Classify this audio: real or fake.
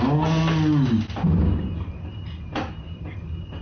real